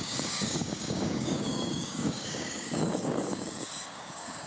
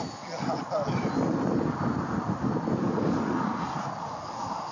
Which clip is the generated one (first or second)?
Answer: first